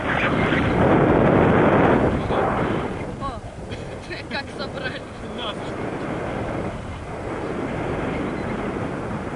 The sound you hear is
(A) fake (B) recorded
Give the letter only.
B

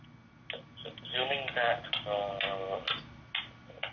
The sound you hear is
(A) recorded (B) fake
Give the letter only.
A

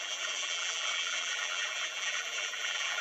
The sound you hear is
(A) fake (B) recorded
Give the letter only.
A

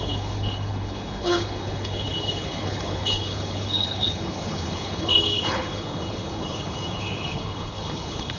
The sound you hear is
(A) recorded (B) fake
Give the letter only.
B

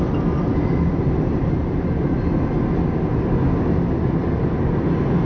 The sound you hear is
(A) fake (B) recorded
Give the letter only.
B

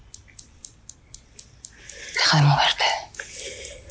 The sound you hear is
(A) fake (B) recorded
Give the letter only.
B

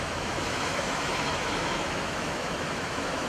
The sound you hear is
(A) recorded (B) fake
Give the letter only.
B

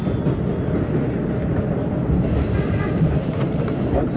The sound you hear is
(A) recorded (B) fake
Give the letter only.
A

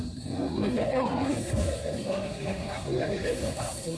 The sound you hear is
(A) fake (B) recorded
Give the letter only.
A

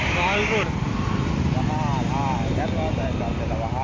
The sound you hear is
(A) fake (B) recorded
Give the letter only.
B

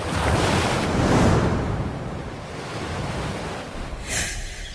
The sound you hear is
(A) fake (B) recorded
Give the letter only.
B